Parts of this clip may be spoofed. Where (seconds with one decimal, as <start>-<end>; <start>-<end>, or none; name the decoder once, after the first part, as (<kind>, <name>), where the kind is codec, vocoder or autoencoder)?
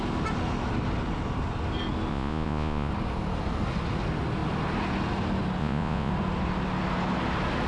2.1-2.9 (vocoder, Vocos); 5.6-6.1